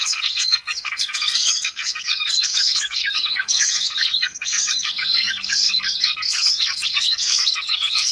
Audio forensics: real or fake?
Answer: fake